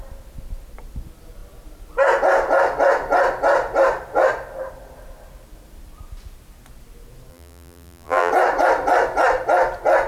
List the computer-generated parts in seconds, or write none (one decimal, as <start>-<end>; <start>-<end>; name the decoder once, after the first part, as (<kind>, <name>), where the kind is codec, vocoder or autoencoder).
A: 7.3-8.3 (vocoder, BigVGAN v2)